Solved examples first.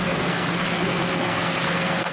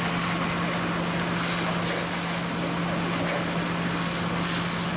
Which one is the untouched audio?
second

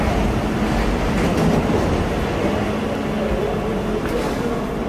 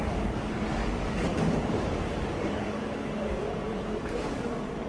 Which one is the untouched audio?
first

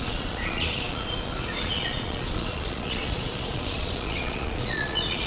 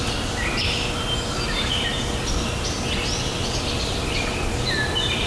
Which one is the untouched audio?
second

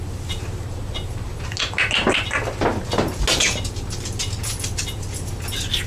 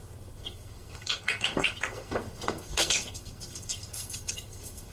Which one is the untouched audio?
first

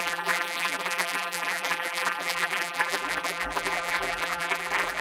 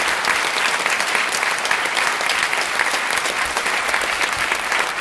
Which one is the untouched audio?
second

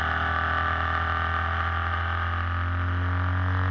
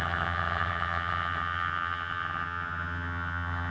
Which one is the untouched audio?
first